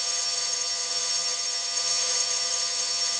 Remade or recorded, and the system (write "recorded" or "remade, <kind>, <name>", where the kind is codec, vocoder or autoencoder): remade, vocoder, HiFi-GAN